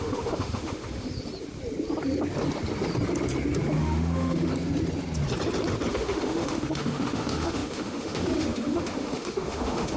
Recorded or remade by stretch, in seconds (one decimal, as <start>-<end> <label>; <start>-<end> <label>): 0.0-1.1 remade; 1.1-3.8 recorded; 3.8-4.5 remade; 4.5-5.9 recorded; 5.9-10.0 remade